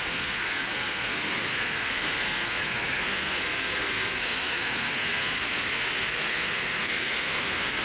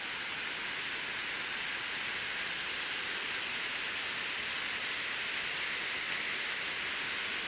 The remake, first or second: first